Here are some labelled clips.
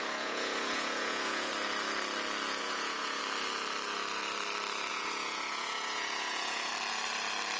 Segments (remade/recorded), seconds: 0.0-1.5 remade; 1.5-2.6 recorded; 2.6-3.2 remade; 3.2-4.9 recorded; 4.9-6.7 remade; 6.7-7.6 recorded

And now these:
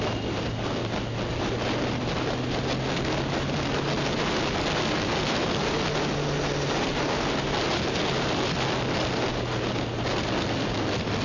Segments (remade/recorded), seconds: 0.0-11.2 recorded

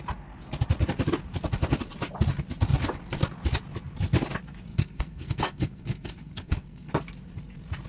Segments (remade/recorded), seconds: 0.0-4.7 recorded; 4.7-6.9 remade; 6.9-7.9 recorded